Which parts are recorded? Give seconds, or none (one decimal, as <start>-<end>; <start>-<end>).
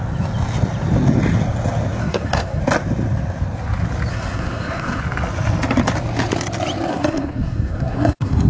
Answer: 0.0-2.0; 2.6-4.1; 5.0-6.9